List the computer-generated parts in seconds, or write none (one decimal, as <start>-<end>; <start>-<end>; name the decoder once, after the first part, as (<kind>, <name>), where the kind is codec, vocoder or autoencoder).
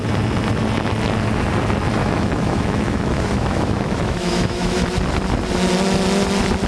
2.0-4.9 (autoencoder, DAC-VAE)